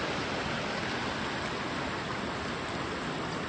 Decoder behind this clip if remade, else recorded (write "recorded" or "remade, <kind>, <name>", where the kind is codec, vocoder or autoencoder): recorded